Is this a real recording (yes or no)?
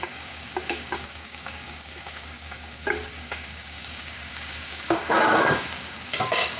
no